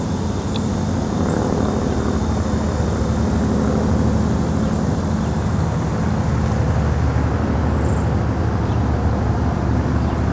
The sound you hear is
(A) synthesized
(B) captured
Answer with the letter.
B